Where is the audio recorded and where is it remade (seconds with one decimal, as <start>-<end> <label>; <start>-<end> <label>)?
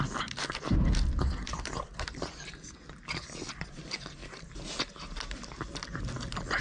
0.0-6.6 recorded